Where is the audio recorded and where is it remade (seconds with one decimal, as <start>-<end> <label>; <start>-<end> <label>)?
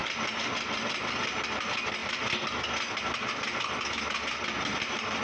0.0-1.1 remade; 1.1-5.2 recorded